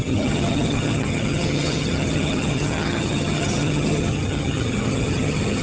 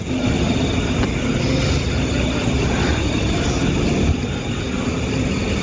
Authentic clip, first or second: second